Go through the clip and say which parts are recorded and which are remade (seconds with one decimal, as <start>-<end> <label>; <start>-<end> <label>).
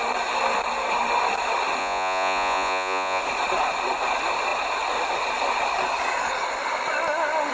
0.0-1.8 recorded; 1.8-3.2 remade; 3.2-7.5 recorded